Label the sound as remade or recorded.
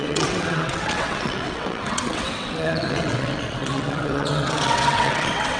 remade